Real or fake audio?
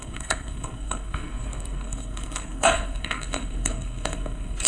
fake